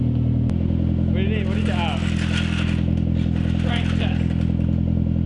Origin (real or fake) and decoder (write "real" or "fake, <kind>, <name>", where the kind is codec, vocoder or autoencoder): real